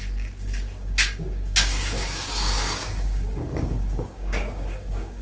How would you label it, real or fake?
fake